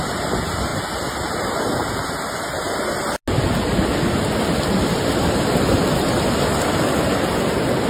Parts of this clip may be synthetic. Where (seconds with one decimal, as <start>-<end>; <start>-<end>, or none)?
none